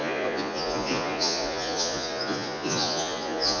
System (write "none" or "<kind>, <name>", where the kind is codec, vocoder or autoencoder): vocoder, Vocos